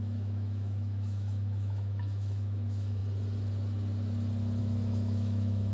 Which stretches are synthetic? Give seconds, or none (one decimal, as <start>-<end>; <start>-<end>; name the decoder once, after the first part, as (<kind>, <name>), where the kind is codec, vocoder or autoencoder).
0.0-3.0 (autoencoder, DAC-VAE); 4.6-5.7

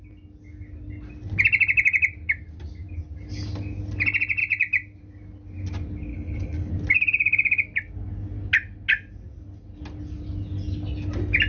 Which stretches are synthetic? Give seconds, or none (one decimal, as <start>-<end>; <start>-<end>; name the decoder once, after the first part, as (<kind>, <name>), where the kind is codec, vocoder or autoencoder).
6.1-6.7 (codec, HILCodec)

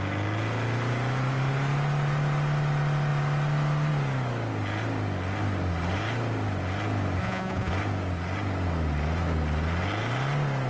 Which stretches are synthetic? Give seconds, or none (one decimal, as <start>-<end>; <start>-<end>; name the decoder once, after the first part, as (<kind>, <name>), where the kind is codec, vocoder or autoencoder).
7.2-7.7 (vocoder, Vocos)

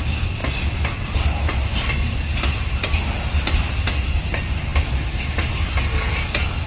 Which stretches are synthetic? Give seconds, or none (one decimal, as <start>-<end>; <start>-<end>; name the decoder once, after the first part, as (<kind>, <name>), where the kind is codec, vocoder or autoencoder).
none

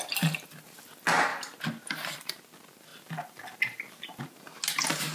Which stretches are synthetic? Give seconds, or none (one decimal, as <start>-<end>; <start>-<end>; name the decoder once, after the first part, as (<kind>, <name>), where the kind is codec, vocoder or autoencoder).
1.3-2.3 (vocoder, BigVGAN v2); 2.9-4.2